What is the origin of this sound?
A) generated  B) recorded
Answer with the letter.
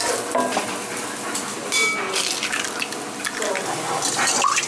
B